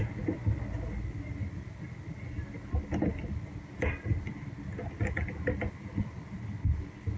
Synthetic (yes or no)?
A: no